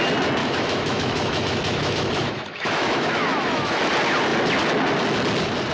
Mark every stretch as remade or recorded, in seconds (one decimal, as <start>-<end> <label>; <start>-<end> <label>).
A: 0.0-0.4 recorded; 0.4-3.8 remade; 3.8-5.7 recorded